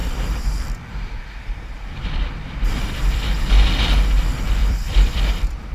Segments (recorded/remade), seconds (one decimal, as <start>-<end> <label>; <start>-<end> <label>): 0.0-3.4 remade; 3.4-4.6 recorded; 4.6-5.7 remade